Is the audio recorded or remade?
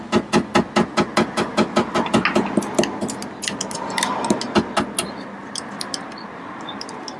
recorded